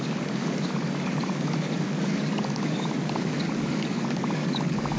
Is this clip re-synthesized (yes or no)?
yes